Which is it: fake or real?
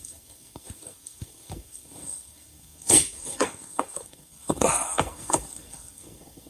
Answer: fake